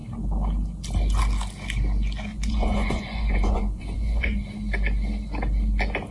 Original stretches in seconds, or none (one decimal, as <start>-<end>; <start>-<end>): 0.0-2.3; 4.4-6.1